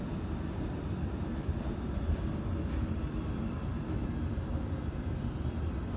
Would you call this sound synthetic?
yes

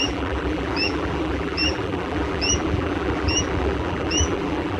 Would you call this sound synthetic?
yes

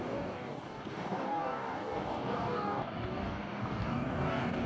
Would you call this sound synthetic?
yes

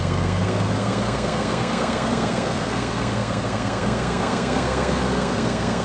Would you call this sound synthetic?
yes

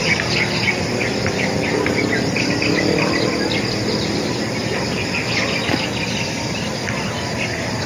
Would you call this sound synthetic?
yes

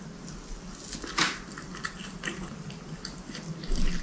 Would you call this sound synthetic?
no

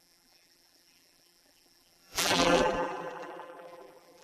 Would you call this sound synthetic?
yes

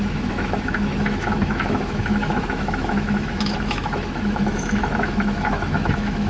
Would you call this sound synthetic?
yes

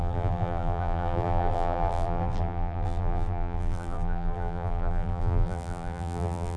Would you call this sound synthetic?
yes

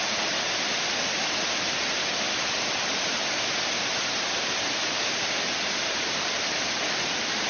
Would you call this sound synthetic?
yes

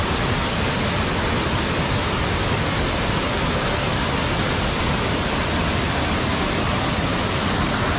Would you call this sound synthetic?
no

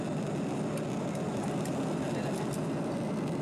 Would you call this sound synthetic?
no